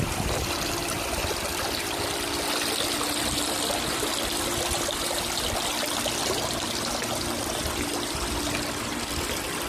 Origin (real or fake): real